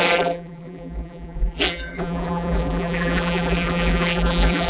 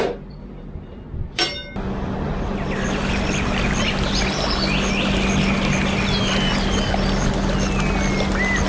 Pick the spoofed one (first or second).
first